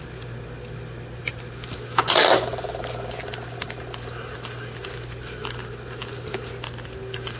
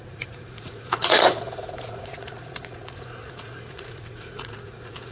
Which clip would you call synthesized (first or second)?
second